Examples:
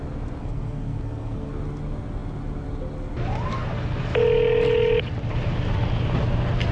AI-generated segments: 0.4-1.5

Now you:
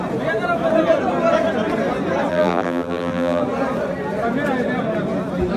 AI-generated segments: 2.3-3.4

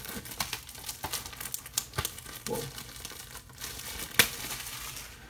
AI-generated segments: none

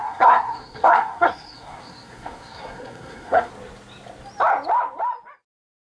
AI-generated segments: 0.0-3.5

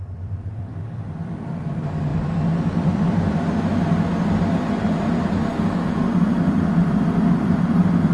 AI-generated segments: 0.0-3.7; 5.0-5.5; 6.0-8.1

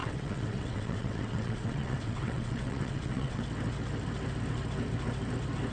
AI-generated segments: 0.0-3.4

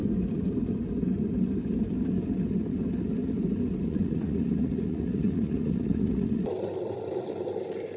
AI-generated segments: 3.9-6.4